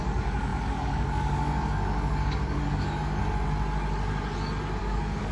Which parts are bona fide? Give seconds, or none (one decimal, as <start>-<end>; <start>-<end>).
3.2-4.8

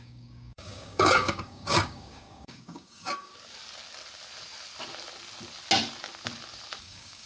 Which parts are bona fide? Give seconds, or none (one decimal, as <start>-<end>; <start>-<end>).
3.3-6.8

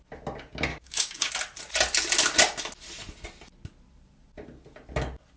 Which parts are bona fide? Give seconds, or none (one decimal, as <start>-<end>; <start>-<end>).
0.0-0.7; 1.3-5.4

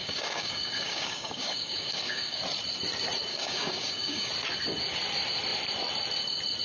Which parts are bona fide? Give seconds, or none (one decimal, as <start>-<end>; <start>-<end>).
2.4-3.3; 4.3-6.6